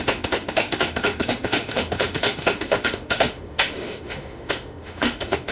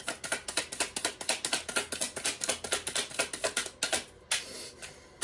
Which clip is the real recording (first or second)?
second